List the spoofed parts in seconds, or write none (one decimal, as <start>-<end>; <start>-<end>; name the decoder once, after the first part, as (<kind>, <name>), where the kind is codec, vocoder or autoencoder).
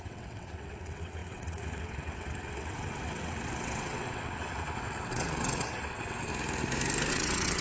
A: 0.0-6.3 (vocoder, WaveNeXt); 7.1-7.6